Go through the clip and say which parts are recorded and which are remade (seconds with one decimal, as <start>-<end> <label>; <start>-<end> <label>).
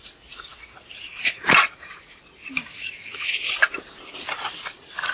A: 0.0-2.7 recorded; 2.7-3.3 remade; 3.3-5.1 recorded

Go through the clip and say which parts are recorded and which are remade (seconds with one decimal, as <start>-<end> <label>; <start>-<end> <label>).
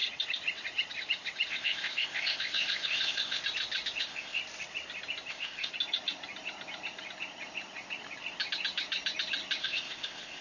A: 0.0-1.5 recorded; 1.5-3.4 remade; 3.4-4.0 recorded; 4.0-4.4 remade; 4.4-5.3 recorded; 5.3-5.7 remade; 5.7-9.6 recorded; 9.6-10.4 remade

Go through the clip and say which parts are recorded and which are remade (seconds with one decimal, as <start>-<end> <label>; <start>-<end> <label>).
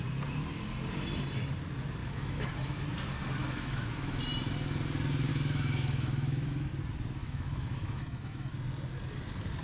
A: 0.0-2.0 recorded; 2.0-2.8 remade; 2.8-3.4 recorded; 3.4-4.2 remade; 4.2-5.3 recorded; 5.3-6.7 remade; 6.7-7.2 recorded; 7.2-8.5 remade; 8.5-9.6 recorded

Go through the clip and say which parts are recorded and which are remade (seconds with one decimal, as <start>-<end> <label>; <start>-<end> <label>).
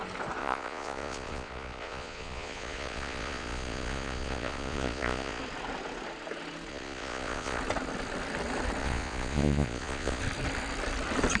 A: 0.0-0.4 recorded; 0.4-5.4 remade; 5.4-6.7 recorded; 6.7-7.6 remade; 7.6-8.8 recorded; 8.8-10.2 remade; 10.2-11.4 recorded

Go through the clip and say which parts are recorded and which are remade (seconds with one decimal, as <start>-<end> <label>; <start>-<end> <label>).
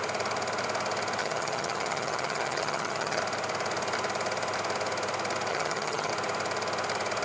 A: 0.0-1.2 recorded; 1.2-3.2 remade; 3.2-5.5 recorded; 5.5-6.1 remade; 6.1-7.2 recorded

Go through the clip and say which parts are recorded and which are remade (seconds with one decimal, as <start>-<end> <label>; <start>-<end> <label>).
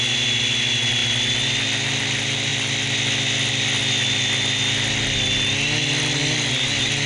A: 0.0-7.1 recorded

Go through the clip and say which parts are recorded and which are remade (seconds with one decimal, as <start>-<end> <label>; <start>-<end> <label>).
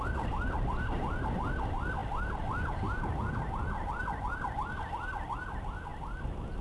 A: 0.0-5.9 recorded; 5.9-6.6 remade